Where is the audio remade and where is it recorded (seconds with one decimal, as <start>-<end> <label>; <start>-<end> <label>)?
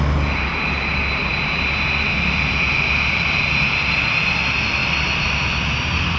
0.0-6.2 recorded